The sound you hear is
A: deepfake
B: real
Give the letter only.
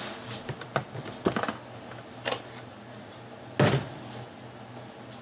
B